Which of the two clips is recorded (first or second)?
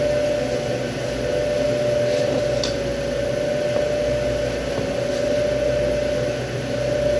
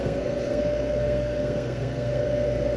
first